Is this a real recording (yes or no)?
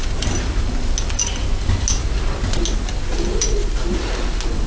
yes